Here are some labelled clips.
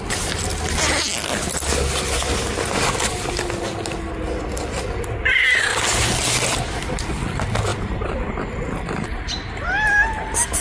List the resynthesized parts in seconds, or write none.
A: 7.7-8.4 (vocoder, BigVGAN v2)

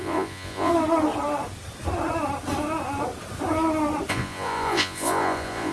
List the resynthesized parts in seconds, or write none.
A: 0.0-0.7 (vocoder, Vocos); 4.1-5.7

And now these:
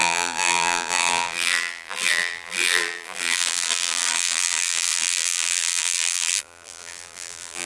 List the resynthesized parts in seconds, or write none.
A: 0.0-7.7 (vocoder, BigVGAN v2)

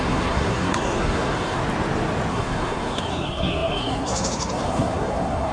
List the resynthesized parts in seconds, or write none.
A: 0.0-1.6 (codec, SNAC); 2.3-5.5